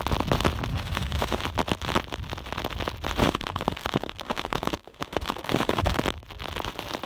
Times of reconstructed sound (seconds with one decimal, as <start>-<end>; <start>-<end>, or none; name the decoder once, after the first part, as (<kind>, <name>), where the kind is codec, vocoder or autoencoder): 0.7-1.4 (autoencoder, DAC-VAE); 3.2-6.0